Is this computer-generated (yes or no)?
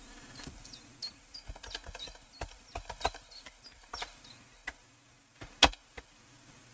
no